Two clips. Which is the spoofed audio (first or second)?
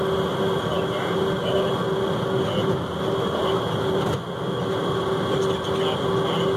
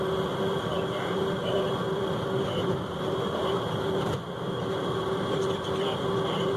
second